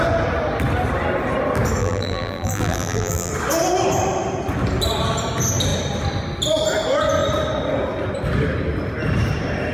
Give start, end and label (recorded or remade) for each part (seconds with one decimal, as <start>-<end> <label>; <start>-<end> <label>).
0.0-1.8 recorded; 1.8-3.3 remade; 3.3-9.7 recorded